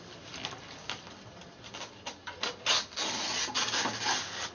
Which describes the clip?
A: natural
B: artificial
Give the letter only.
A